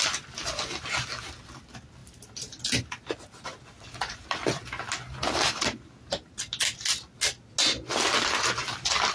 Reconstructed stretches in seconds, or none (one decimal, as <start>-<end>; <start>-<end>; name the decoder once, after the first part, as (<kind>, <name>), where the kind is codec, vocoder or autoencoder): none